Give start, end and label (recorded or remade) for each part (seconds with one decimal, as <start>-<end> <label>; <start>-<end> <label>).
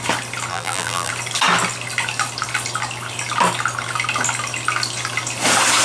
0.0-0.5 recorded; 0.5-1.1 remade; 1.1-5.8 recorded